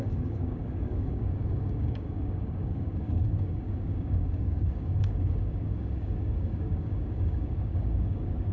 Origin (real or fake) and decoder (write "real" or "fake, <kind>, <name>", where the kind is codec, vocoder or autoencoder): fake, codec, DAC